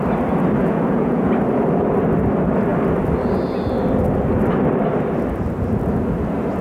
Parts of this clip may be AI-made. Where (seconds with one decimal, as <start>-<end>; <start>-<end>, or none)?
0.6-1.3